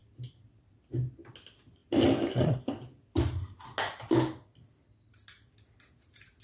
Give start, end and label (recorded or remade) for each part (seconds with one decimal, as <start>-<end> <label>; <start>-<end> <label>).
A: 0.0-6.4 recorded